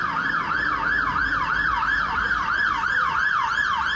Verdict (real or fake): real